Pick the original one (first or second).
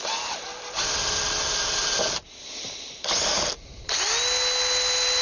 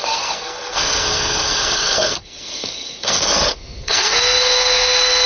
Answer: first